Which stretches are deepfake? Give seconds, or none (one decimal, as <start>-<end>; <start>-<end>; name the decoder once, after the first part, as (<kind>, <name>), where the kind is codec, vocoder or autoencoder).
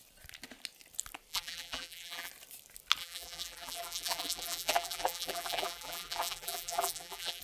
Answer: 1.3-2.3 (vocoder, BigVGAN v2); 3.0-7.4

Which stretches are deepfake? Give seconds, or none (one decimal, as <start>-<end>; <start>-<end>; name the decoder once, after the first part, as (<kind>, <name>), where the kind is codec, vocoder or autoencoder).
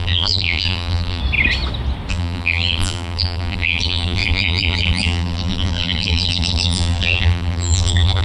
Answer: 0.0-1.2 (vocoder, BigVGAN v2); 2.1-8.2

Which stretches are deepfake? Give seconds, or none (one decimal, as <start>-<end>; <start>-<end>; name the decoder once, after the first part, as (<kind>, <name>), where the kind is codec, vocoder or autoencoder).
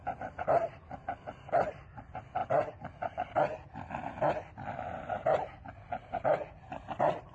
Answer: none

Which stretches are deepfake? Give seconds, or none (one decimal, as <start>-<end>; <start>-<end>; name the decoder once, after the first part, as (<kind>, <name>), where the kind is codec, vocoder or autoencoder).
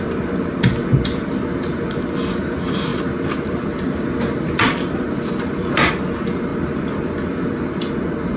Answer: 2.9-5.9 (vocoder, BigVGAN v2); 6.5-7.9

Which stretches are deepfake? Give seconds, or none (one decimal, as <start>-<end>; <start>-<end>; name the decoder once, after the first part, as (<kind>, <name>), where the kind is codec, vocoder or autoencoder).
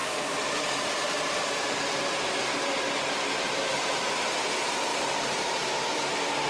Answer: 0.0-3.9 (vocoder, BigVGAN v2); 4.9-6.5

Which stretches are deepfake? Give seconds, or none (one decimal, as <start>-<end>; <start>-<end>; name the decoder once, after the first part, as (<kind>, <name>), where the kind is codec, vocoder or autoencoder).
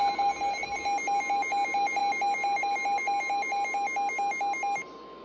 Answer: none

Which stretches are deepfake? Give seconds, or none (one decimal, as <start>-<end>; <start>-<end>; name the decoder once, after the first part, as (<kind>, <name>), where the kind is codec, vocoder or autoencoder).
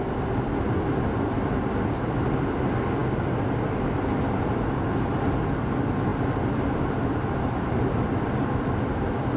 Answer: none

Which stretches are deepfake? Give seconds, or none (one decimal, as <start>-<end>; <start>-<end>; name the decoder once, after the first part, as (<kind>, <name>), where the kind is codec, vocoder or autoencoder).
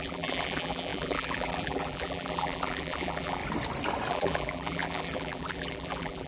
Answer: 0.0-3.4 (vocoder, BigVGAN v2); 4.1-6.3